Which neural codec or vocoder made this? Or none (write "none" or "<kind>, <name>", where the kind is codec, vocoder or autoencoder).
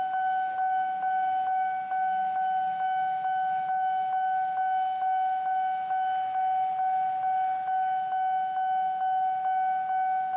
none